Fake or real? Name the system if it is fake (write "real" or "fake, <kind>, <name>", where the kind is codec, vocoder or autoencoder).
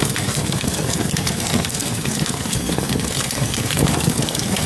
fake, codec, SNAC